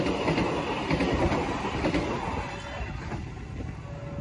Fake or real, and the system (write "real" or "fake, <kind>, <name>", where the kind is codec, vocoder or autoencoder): real